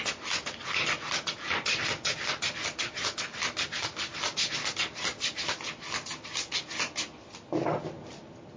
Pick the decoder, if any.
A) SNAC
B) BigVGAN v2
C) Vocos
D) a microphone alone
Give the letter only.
D